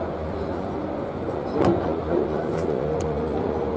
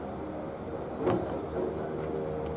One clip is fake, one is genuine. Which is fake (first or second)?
first